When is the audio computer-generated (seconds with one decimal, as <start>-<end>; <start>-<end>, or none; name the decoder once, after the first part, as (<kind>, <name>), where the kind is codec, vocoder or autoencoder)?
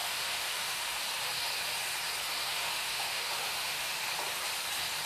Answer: 0.0-1.0 (autoencoder, DAC-VAE); 2.4-4.1